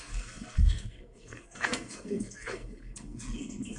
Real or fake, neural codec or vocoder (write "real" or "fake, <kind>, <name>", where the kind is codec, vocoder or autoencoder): fake, codec, SNAC